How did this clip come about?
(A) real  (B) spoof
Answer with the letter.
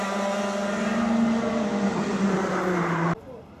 A